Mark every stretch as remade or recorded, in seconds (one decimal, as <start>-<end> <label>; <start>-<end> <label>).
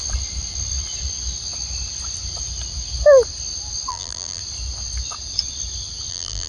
0.0-3.9 recorded; 3.9-4.4 remade; 4.4-6.1 recorded; 6.1-6.5 remade